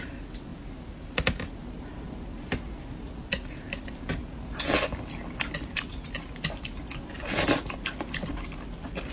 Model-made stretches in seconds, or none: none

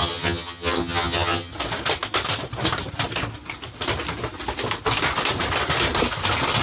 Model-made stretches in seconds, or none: 0.0-1.5 (vocoder, HiFi-GAN)